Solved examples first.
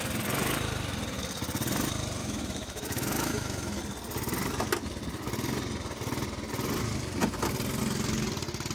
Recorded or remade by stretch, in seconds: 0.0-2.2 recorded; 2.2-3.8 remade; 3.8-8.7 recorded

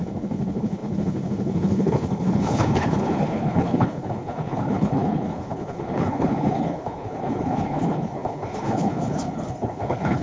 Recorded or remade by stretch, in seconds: 0.0-10.2 remade